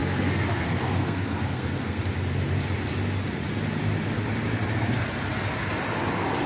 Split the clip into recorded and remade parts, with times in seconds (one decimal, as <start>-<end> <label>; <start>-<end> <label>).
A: 0.0-2.0 remade; 2.0-6.5 recorded